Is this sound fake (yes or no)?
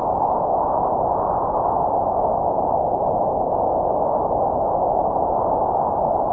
no